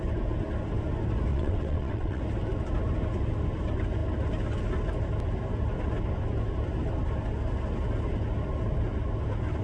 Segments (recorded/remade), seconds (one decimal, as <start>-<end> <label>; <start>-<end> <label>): 0.0-1.3 recorded; 1.3-2.2 remade; 2.2-9.6 recorded